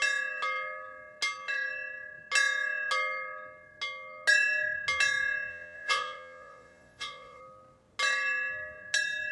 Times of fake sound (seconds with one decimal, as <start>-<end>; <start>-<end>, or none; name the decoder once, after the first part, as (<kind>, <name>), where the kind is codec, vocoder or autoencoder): 5.5-7.4 (vocoder, Vocos)